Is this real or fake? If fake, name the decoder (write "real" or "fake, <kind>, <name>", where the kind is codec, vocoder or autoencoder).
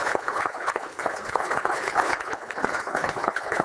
fake, codec, HILCodec